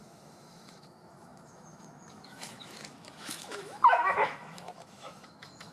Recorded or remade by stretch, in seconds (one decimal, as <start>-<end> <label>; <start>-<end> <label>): 0.0-5.7 remade